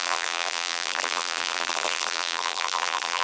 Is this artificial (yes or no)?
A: yes